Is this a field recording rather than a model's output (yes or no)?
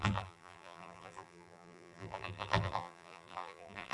no